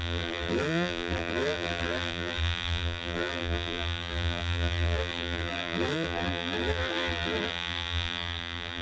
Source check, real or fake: fake